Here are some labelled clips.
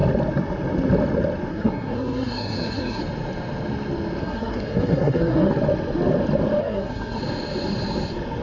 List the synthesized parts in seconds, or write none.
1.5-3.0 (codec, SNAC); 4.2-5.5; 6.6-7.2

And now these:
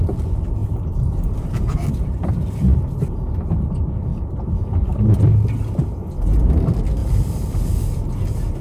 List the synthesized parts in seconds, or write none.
0.6-3.1 (vocoder, BigVGAN v2); 4.1-4.7